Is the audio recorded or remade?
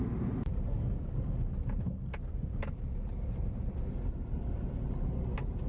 recorded